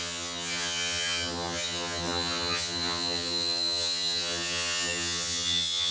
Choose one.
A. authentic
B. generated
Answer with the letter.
B